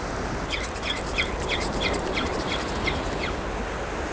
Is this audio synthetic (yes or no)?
no